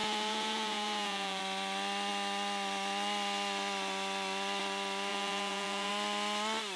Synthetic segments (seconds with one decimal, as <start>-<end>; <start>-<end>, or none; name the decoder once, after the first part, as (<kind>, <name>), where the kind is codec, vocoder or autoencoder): 0.0-1.4 (vocoder, Vocos); 5.1-5.9